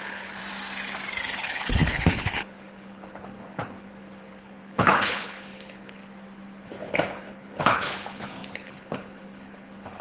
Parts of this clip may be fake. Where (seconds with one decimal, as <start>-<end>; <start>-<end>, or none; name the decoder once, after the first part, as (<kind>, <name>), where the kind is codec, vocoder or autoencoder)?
0.0-0.4 (codec, HILCodec); 1.2-6.0; 6.6-10.0